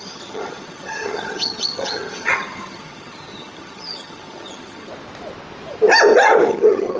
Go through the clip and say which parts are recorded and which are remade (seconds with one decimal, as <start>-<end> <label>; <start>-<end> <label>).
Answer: 0.0-4.9 remade; 4.9-6.5 recorded; 6.5-7.0 remade